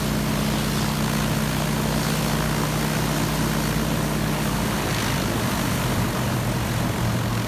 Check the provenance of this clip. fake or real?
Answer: real